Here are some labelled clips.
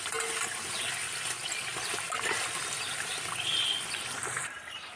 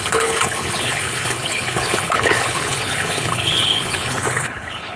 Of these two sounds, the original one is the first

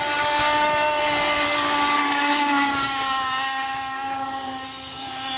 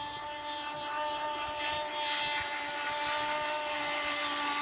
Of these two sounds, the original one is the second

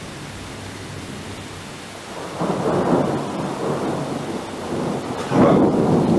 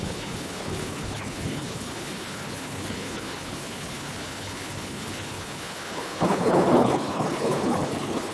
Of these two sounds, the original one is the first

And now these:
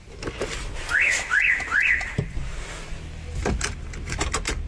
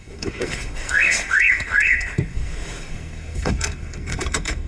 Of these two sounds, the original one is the first